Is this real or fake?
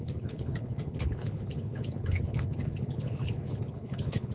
fake